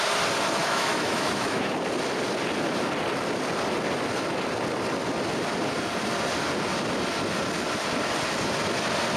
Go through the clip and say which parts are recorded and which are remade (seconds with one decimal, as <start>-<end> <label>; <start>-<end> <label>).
0.0-0.6 recorded; 0.6-1.7 remade; 1.7-9.2 recorded